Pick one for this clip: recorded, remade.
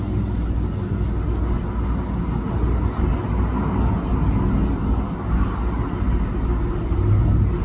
recorded